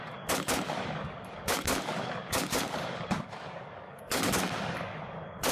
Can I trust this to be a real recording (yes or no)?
no